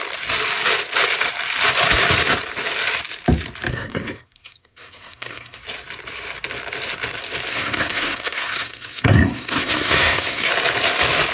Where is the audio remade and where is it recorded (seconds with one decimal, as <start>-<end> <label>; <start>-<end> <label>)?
0.0-3.7 recorded; 3.7-5.6 remade; 5.6-7.5 recorded; 7.5-10.5 remade; 10.5-11.3 recorded